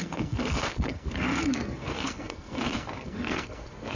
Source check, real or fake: fake